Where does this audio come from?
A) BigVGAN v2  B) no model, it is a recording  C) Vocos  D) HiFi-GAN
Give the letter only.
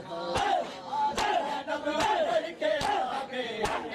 A